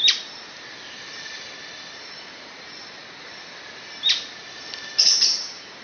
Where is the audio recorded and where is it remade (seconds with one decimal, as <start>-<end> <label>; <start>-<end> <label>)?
0.0-5.8 recorded